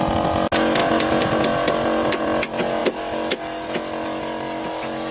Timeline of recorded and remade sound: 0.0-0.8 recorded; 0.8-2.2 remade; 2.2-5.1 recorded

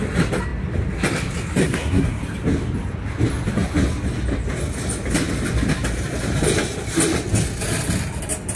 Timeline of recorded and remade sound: 0.0-1.6 recorded; 1.6-2.2 remade; 2.2-8.6 recorded

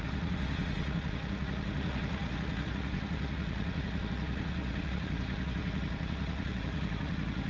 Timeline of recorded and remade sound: 0.0-7.5 remade